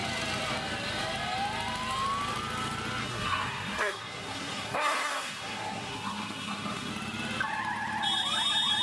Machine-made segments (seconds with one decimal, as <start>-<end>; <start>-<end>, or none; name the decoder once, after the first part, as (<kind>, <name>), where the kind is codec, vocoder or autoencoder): 3.0-6.9 (codec, SNAC)

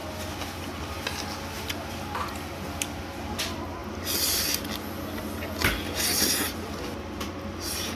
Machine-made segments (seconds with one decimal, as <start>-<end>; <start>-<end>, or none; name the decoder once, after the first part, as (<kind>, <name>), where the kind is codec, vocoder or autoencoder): none

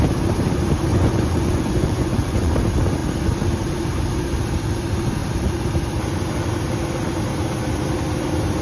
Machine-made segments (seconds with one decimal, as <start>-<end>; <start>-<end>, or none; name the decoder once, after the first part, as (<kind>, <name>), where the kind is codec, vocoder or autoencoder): 0.9-2.5 (vocoder, Vocos)

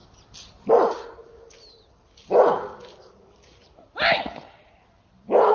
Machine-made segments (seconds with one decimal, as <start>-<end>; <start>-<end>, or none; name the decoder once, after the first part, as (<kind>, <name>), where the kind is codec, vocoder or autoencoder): none

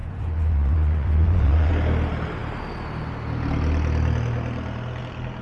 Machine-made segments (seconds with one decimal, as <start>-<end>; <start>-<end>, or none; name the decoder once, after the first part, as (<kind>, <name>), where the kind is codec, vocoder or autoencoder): 0.0-1.7 (vocoder, Vocos)

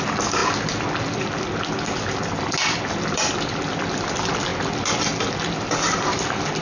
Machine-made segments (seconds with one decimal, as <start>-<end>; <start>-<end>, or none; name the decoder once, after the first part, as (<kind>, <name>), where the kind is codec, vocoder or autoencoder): 0.0-0.4 (vocoder, BigVGAN v2); 2.9-4.5; 5.6-6.6

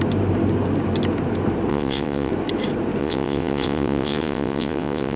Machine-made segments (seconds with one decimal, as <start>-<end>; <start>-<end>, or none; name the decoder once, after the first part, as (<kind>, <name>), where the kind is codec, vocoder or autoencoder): 1.7-2.3 (vocoder, WaveNeXt); 3.0-5.2